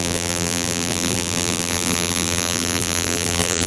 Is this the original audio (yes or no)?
no